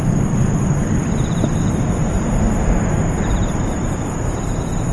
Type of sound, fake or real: real